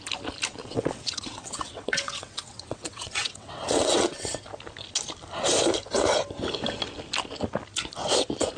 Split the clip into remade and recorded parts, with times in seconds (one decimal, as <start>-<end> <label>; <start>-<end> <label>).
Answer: 0.0-0.6 recorded; 0.6-4.3 remade; 4.3-8.6 recorded